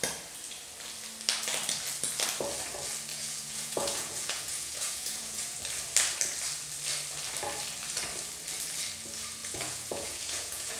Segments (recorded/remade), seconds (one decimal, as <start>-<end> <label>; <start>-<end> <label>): 0.0-3.1 recorded; 3.1-5.6 remade; 5.6-9.4 recorded; 9.4-10.8 remade